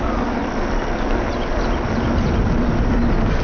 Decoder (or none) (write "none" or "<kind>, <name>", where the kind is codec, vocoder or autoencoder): vocoder, BigVGAN v2